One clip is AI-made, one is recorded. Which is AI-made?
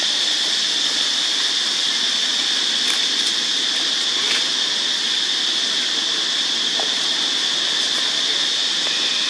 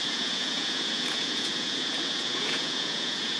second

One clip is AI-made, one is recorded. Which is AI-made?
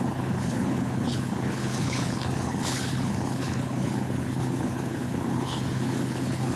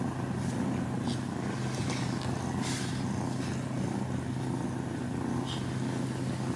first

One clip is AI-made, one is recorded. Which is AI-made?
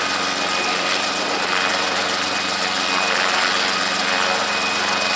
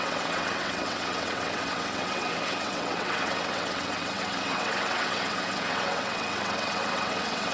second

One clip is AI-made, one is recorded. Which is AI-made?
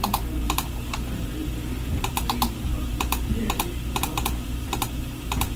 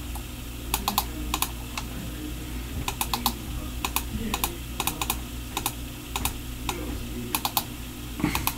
first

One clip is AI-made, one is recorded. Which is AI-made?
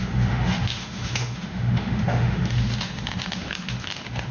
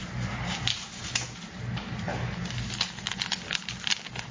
first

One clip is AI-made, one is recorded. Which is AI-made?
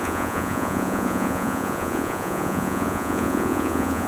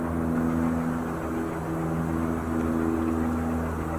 first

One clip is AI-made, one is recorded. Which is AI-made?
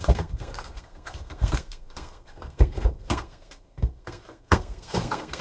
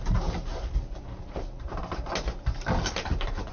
first